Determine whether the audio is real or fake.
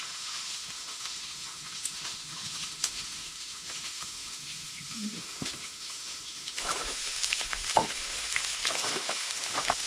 fake